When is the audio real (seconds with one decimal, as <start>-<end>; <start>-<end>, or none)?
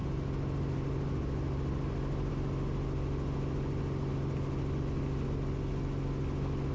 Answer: 0.0-6.7